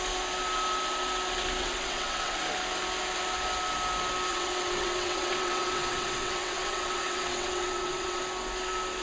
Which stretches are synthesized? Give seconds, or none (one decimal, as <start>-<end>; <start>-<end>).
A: 1.6-2.4; 4.3-8.2